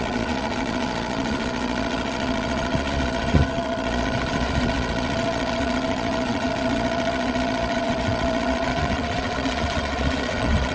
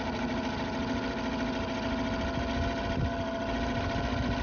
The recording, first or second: second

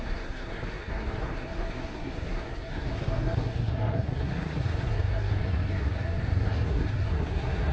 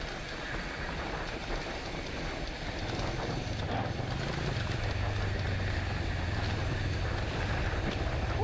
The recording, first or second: second